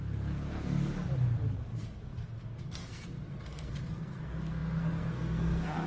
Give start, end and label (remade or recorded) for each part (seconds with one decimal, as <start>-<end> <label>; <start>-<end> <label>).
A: 0.0-0.9 remade; 0.9-1.6 recorded; 1.6-5.9 remade